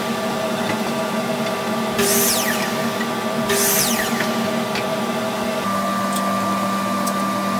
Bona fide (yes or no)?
yes